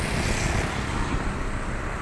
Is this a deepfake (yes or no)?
no